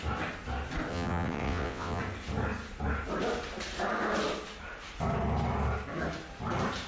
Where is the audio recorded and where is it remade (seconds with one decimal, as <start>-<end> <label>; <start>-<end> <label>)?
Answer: 0.0-0.9 recorded; 0.9-2.0 remade; 2.0-6.9 recorded